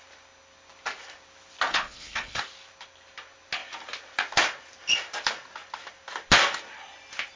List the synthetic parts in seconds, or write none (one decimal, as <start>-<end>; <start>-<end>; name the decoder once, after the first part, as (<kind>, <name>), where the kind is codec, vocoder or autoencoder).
1.7-2.4 (codec, HILCodec)